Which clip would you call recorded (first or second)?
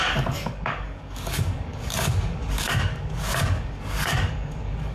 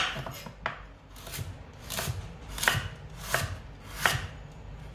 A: second